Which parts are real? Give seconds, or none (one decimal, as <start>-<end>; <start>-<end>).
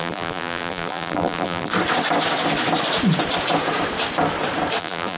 1.7-4.8